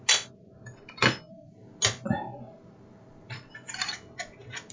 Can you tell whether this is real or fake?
real